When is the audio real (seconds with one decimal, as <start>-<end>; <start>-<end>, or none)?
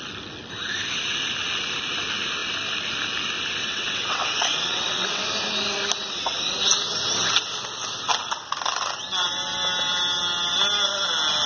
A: 0.0-3.6; 5.2-11.5